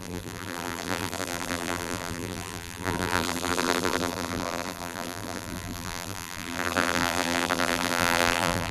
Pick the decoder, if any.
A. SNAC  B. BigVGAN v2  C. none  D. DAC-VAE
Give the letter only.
B